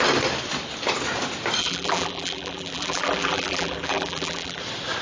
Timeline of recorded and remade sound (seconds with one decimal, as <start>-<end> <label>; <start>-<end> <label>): 0.0-1.6 recorded; 1.6-4.6 remade; 4.6-5.0 recorded